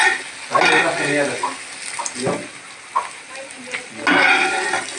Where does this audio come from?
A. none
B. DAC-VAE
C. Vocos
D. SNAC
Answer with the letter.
A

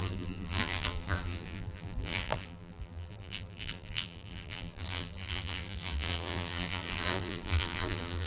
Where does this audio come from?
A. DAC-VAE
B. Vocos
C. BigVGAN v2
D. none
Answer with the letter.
C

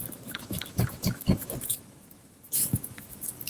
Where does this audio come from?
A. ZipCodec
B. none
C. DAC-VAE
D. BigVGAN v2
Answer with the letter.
C